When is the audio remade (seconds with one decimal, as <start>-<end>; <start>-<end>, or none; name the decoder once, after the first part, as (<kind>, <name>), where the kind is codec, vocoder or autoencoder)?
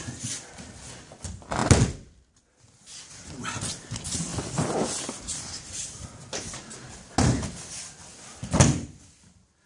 none